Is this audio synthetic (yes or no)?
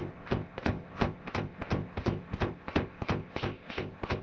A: yes